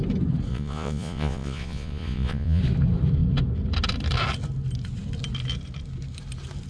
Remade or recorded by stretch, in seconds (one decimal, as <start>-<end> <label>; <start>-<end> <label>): 0.0-0.5 recorded; 0.5-2.6 remade; 2.6-6.7 recorded

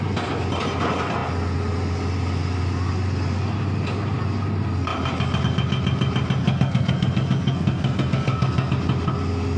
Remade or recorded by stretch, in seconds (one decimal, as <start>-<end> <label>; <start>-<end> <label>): 0.0-6.4 recorded; 6.4-8.7 remade; 8.7-9.6 recorded

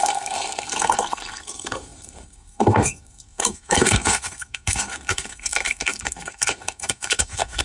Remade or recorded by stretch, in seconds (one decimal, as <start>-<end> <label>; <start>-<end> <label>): 0.0-7.6 remade

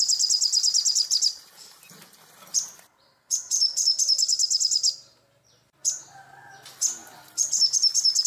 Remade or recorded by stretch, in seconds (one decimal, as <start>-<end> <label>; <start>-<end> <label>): 0.0-8.3 recorded

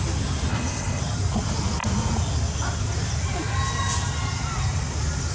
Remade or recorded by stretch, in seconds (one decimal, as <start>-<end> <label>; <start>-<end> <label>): 0.0-0.5 recorded; 0.5-1.0 remade; 1.0-5.3 recorded

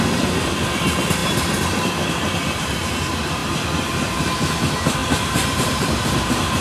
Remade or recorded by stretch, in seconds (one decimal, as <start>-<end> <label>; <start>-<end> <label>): 0.0-3.4 remade; 3.4-4.6 recorded; 4.6-6.6 remade

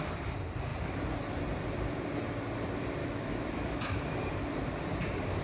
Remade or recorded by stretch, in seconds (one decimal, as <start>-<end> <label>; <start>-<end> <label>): 0.0-3.0 recorded; 3.0-4.1 remade; 4.1-5.4 recorded